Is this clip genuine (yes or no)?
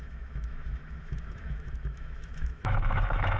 no